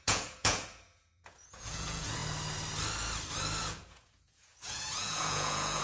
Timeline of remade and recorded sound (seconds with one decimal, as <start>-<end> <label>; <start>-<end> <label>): 0.0-2.2 remade; 2.2-3.6 recorded; 3.6-5.8 remade